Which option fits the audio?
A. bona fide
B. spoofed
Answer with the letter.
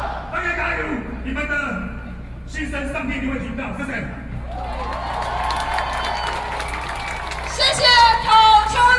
A